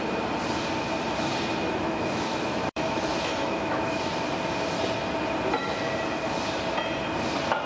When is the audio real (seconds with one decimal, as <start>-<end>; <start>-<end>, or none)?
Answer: 0.0-1.5; 4.0-7.7